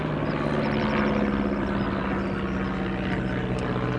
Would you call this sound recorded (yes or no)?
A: yes